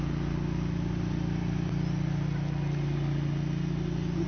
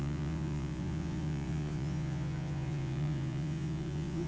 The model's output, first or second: second